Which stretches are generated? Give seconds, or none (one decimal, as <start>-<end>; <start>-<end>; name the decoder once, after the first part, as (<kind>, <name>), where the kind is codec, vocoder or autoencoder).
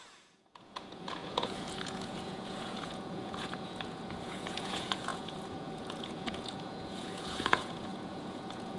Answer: 0.0-8.8 (vocoder, Vocos)